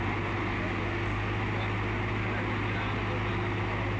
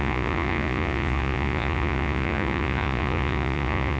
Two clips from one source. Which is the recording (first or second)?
first